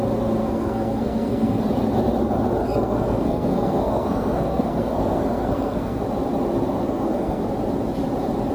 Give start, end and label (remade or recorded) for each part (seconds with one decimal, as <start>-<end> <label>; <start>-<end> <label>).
0.0-0.4 recorded; 0.4-1.6 remade; 1.6-2.6 recorded; 2.6-6.0 remade; 6.0-6.8 recorded; 6.8-7.4 remade; 7.4-8.5 recorded